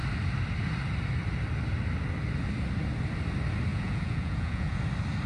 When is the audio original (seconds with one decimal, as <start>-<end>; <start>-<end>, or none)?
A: 0.0-3.7; 4.8-5.3